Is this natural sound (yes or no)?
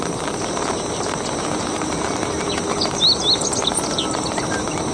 yes